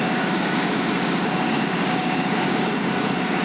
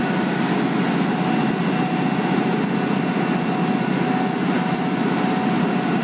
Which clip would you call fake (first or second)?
first